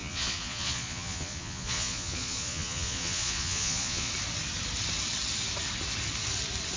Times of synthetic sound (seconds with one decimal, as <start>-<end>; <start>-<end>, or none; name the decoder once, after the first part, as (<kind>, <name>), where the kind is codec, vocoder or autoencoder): 0.0-4.1 (vocoder, Vocos)